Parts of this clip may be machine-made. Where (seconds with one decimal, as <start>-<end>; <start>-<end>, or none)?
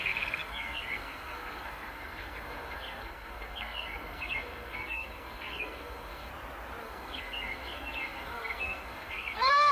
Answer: 0.0-6.3; 6.8-9.7